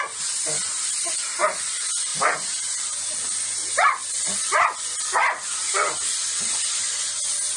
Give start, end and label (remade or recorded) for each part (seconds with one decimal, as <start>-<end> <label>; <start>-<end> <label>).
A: 0.0-7.6 recorded